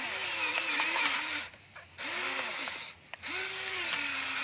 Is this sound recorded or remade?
recorded